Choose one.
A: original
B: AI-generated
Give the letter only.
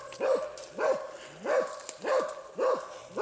A